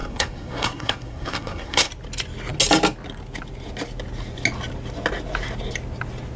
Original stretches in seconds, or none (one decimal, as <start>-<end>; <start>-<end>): 1.9-6.4